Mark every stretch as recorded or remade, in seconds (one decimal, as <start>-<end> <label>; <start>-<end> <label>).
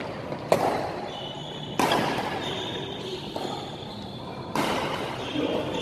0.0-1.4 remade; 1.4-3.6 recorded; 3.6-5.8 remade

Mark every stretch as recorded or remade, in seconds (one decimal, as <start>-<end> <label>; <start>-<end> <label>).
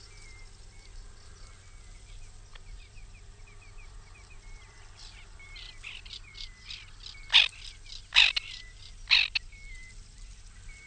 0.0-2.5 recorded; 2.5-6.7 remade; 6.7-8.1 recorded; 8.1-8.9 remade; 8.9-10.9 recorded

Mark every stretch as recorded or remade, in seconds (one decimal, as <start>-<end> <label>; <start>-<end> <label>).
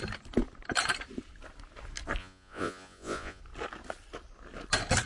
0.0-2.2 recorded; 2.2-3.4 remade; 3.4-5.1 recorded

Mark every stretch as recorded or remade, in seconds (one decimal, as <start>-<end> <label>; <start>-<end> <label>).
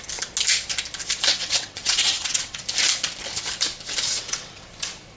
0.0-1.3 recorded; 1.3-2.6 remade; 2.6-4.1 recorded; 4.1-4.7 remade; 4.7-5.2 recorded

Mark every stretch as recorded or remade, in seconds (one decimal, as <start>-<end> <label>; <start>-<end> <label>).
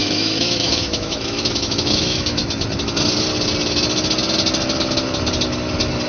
0.0-2.4 remade; 2.4-6.1 recorded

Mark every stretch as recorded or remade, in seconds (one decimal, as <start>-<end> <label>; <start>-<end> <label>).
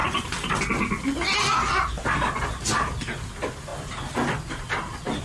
0.0-5.2 recorded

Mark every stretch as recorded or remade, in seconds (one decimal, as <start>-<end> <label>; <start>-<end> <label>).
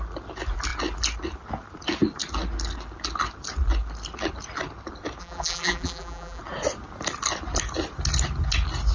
0.0-5.2 recorded; 5.2-6.4 remade; 6.4-8.9 recorded